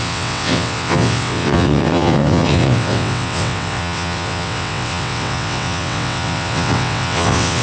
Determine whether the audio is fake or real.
fake